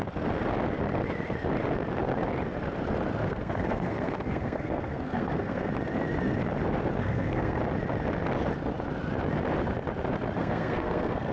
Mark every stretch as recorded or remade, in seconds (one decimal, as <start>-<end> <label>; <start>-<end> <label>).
0.0-3.2 recorded; 3.2-5.7 remade; 5.7-7.0 recorded; 7.0-7.6 remade; 7.6-10.4 recorded; 10.4-11.3 remade